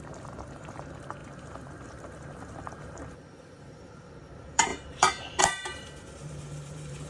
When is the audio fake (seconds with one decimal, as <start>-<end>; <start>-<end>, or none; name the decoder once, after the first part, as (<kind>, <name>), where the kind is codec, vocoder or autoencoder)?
0.0-7.1 (vocoder, BigVGAN v2)